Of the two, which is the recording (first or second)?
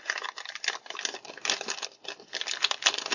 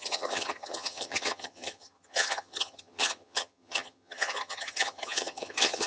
first